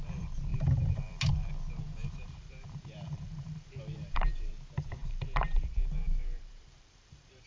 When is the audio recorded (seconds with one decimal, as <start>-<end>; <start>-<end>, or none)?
0.0-0.5; 1.3-2.0; 4.5-5.0